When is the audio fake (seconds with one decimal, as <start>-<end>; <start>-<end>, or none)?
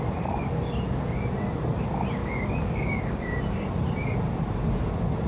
2.2-3.4